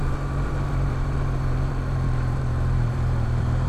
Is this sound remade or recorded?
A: remade